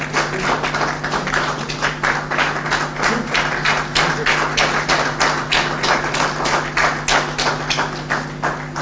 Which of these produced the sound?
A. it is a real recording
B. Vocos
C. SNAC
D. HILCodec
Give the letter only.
A